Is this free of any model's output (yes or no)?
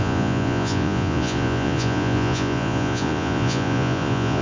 no